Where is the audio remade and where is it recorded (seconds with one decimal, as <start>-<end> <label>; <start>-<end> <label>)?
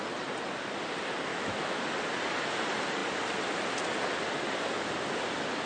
0.0-1.3 recorded; 1.3-1.8 remade; 1.8-5.7 recorded